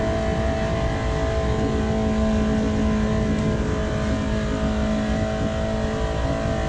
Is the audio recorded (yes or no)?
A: yes